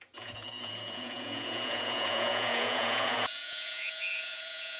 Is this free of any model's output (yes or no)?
no